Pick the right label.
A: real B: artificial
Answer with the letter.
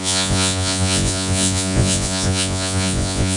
B